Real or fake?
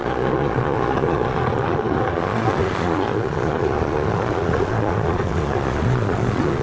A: fake